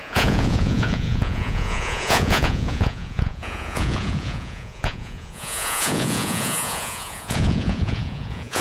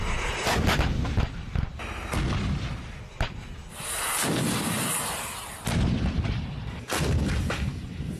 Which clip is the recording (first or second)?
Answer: second